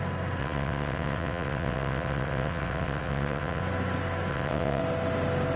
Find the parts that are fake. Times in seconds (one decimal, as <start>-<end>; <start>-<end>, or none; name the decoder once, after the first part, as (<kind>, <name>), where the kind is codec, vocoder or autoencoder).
0.4-3.6 (vocoder, WaveNeXt); 4.3-4.8